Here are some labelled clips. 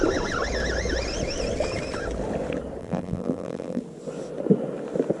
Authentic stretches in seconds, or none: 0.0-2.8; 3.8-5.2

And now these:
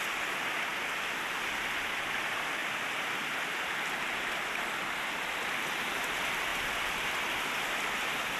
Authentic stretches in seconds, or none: 0.0-8.4

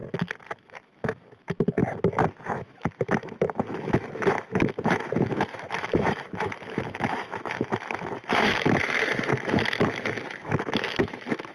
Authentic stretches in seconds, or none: 0.0-0.6; 1.8-2.5

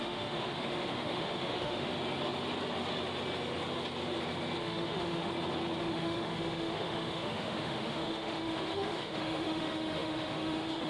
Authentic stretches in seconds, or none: 1.9-4.6; 5.3-5.8

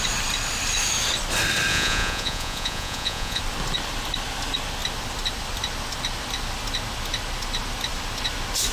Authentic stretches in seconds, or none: 0.0-1.7; 3.4-8.7

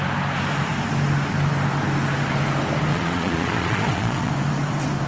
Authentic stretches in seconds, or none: 0.0-2.9; 4.3-5.1

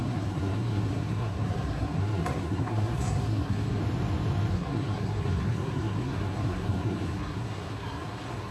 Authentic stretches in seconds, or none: 3.8-4.5

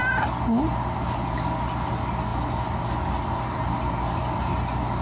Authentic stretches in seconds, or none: 0.0-5.0